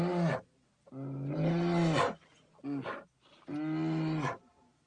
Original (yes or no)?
yes